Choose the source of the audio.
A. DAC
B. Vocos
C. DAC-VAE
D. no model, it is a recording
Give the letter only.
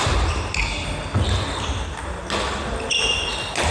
D